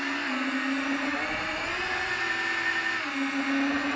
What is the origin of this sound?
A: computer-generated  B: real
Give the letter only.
B